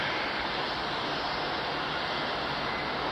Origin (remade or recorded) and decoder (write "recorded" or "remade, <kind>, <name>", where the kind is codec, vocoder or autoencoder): recorded